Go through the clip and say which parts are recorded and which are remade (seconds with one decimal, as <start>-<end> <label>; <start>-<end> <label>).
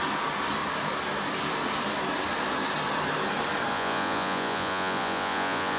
0.0-3.7 recorded; 3.7-5.8 remade